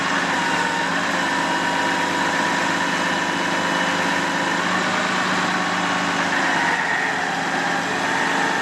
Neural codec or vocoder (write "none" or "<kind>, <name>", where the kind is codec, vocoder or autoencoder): none